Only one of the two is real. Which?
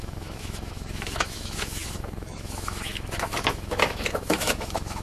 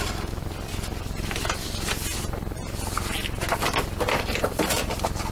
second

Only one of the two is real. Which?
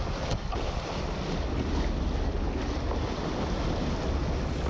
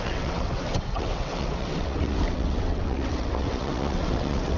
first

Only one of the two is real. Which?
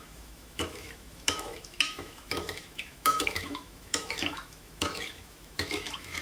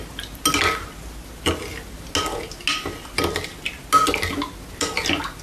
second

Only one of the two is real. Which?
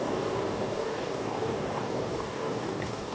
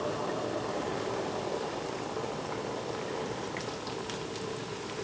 second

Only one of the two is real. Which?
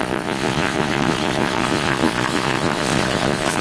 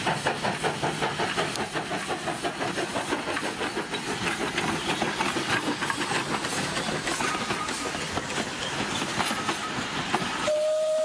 second